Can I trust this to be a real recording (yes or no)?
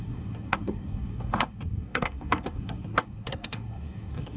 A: no